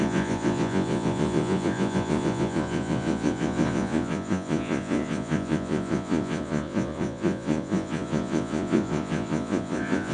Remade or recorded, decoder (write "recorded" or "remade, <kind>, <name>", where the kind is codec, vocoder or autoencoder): remade, vocoder, Vocos